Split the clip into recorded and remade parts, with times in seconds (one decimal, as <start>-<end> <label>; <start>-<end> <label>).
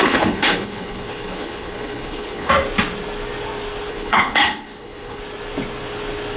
0.0-2.5 remade; 2.5-3.9 recorded; 3.9-5.2 remade; 5.2-6.4 recorded